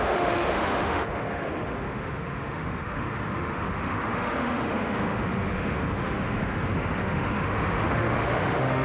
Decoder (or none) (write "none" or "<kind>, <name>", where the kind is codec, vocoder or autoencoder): autoencoder, DAC-VAE